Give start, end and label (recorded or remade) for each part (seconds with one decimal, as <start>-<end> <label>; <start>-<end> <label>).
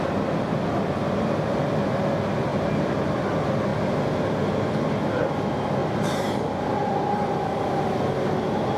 0.0-2.5 recorded; 2.5-3.2 remade; 3.2-5.8 recorded; 5.8-6.3 remade; 6.3-6.8 recorded; 6.8-7.9 remade; 7.9-8.8 recorded